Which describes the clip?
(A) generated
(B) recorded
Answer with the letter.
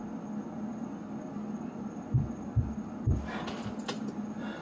B